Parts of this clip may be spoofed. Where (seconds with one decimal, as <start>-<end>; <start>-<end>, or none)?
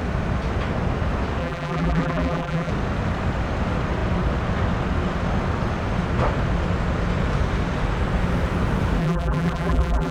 1.4-2.7; 9.0-10.1